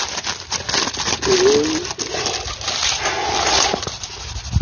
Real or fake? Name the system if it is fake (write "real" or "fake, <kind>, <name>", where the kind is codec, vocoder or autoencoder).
real